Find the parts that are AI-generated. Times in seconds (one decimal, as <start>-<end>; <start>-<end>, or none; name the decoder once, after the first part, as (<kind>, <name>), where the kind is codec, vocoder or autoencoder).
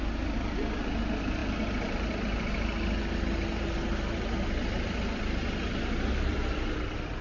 none